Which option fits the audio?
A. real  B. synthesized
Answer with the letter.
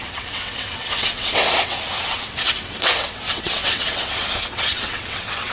B